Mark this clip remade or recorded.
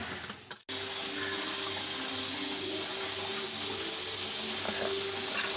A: recorded